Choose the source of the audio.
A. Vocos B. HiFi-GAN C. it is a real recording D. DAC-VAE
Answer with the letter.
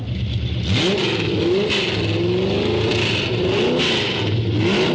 C